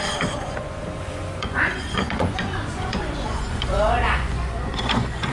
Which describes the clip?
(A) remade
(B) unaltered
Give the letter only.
A